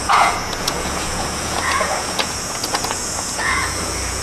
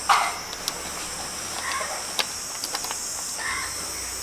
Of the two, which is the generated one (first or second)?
first